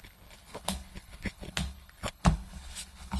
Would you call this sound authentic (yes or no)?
no